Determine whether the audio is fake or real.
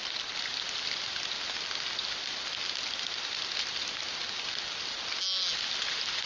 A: real